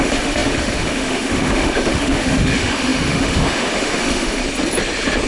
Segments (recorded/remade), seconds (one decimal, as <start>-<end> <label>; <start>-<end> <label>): 0.0-4.4 remade; 4.4-5.3 recorded